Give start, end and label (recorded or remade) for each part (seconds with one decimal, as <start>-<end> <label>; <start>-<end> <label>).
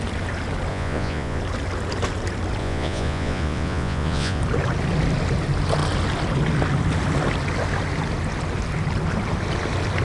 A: 0.0-0.7 recorded; 0.7-1.4 remade; 1.4-2.6 recorded; 2.6-4.4 remade; 4.4-10.0 recorded